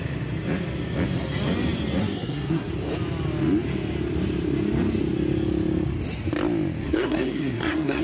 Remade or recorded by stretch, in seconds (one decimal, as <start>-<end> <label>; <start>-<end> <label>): 0.0-2.0 recorded; 2.0-2.7 remade; 2.7-6.8 recorded; 6.8-8.0 remade

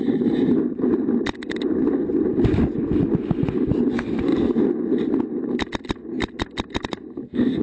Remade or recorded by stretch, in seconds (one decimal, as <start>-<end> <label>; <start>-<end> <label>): 0.0-7.6 recorded